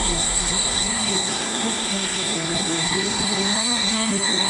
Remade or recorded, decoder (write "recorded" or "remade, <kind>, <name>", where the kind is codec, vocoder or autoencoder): remade, codec, SNAC